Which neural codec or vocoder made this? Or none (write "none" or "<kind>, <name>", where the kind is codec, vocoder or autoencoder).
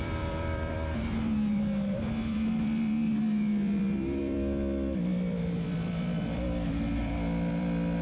vocoder, BigVGAN v2